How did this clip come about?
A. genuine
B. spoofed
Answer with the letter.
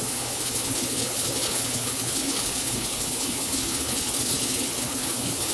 B